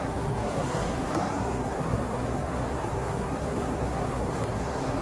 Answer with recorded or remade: remade